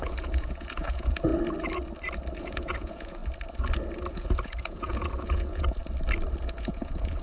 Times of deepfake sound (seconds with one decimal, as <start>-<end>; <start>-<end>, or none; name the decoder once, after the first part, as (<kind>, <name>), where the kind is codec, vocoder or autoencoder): 0.0-1.3 (vocoder, Vocos); 2.4-3.2; 4.1-5.8; 6.4-7.2